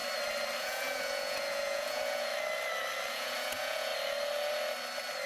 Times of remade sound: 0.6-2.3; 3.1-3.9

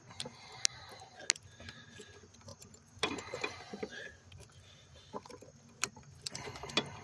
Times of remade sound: 2.5-3.4; 3.9-5.3